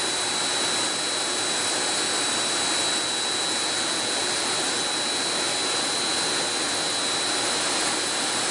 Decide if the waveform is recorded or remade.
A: recorded